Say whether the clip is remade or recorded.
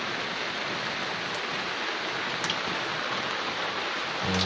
recorded